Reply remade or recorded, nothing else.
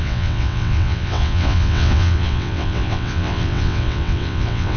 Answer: remade